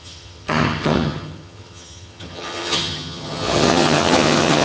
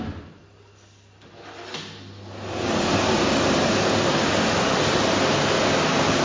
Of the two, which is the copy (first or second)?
first